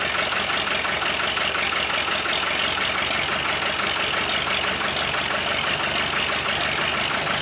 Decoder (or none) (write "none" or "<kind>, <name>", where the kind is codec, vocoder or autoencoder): none